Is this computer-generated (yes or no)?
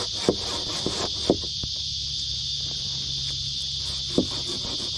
no